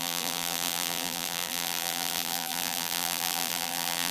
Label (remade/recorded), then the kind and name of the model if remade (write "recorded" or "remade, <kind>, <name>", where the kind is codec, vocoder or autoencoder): remade, vocoder, BigVGAN v2